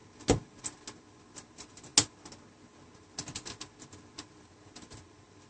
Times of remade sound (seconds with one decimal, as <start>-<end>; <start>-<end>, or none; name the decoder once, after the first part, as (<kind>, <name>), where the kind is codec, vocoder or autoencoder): none